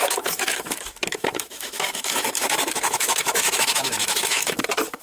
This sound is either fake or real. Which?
fake